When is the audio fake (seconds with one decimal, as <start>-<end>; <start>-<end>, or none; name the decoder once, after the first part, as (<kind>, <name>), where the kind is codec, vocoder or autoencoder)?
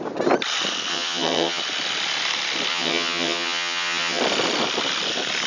0.9-1.6 (vocoder, HiFi-GAN); 2.7-4.2